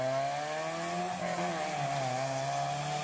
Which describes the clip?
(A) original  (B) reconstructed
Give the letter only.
A